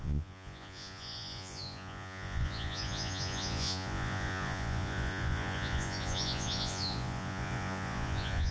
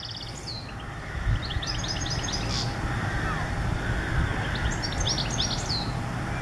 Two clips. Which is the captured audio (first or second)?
second